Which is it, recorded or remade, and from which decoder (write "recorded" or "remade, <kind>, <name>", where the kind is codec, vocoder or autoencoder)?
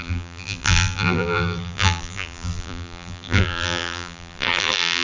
remade, vocoder, BigVGAN v2